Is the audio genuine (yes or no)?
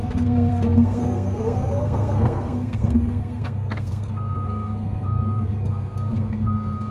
no